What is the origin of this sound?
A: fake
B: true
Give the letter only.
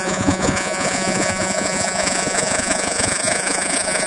A